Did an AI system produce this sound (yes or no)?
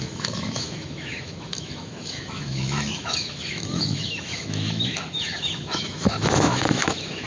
yes